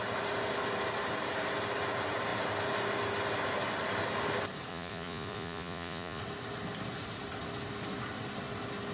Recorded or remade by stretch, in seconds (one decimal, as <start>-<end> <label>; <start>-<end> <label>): 0.0-4.7 recorded; 4.7-6.2 remade; 6.2-8.9 recorded